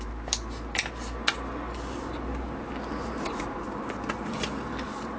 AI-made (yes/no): no